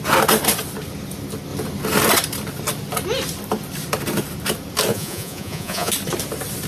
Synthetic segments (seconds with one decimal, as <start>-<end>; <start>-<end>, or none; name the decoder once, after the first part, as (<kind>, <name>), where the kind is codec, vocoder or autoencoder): 4.9-5.9 (vocoder, Vocos)

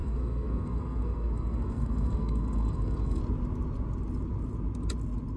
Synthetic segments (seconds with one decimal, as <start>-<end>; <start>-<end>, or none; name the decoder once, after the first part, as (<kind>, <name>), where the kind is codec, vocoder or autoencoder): 0.0-3.2 (codec, SNAC)

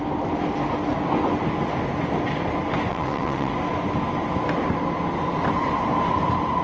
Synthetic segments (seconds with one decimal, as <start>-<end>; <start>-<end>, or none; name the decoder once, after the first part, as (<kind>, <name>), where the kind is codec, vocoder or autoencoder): 2.9-3.5 (vocoder, WaveNeXt)

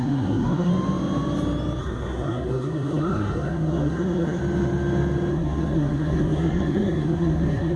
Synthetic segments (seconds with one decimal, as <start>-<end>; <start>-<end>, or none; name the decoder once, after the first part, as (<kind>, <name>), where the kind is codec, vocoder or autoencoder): 0.0-0.7 (codec, SNAC); 1.8-4.4; 5.3-7.8

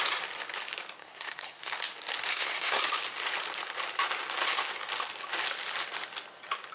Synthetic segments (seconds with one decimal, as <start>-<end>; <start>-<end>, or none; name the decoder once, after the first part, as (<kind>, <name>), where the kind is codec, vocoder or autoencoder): 1.0-1.7 (codec, SNAC); 2.3-2.8

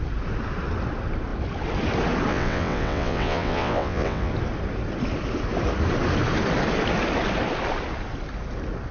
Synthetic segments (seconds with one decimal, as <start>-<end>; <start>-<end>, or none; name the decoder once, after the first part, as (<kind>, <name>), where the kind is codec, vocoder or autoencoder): 2.3-4.3 (vocoder, WaveNeXt)